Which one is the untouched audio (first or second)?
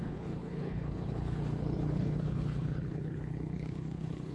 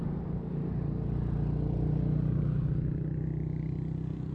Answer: second